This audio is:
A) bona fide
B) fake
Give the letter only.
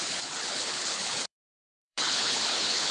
B